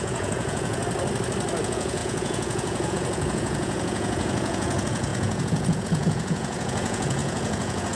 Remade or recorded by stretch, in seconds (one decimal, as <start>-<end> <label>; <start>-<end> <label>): 0.0-0.8 remade; 0.8-1.6 recorded; 1.6-7.9 remade